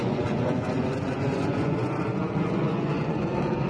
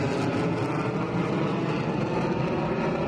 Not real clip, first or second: first